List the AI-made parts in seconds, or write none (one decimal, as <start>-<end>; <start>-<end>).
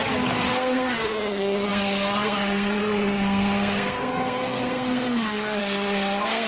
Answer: 0.5-6.5